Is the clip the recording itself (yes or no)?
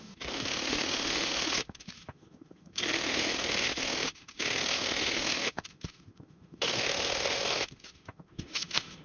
no